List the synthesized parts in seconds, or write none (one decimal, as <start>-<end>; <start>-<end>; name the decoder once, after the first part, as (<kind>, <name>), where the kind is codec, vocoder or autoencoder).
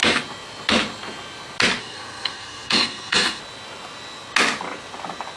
1.8-3.4 (codec, SNAC)